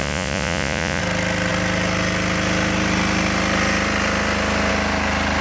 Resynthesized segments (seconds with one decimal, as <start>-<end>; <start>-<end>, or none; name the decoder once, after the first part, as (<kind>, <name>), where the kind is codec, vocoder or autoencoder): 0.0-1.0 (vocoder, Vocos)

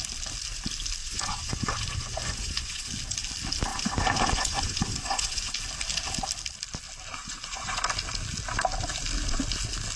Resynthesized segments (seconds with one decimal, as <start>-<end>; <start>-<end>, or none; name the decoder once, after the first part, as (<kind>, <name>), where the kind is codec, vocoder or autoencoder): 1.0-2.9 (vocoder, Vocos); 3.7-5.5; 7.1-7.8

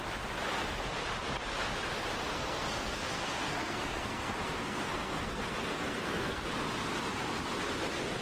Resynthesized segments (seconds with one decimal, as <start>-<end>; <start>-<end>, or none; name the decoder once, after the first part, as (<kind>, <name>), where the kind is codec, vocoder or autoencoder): 2.3-6.4 (codec, SNAC)

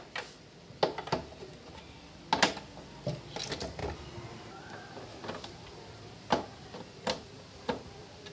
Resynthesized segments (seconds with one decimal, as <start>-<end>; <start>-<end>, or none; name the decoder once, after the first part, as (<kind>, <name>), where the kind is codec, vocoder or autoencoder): none

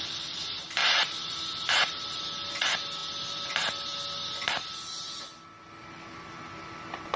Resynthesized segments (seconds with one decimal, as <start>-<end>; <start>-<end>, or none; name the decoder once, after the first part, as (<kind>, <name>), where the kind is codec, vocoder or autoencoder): none

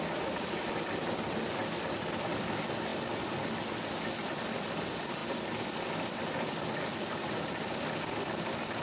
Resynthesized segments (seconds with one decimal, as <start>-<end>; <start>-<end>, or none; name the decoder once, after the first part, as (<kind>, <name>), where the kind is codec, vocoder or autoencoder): none